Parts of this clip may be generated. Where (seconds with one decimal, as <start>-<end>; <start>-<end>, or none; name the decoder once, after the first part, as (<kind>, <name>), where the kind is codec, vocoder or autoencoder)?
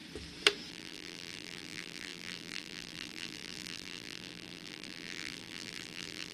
0.7-6.3 (vocoder, BigVGAN v2)